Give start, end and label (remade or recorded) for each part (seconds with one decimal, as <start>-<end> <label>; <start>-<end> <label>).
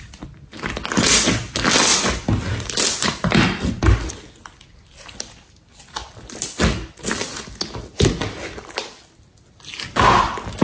0.0-10.6 recorded